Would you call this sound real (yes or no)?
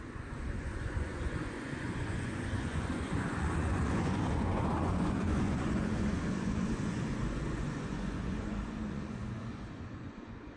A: no